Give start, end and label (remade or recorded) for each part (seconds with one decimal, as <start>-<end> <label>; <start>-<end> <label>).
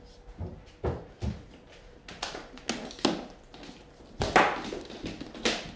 0.0-5.8 recorded